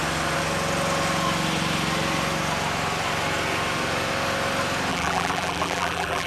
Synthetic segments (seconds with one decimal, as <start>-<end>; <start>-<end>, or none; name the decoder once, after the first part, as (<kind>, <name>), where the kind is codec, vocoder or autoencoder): 4.9-6.3 (vocoder, BigVGAN v2)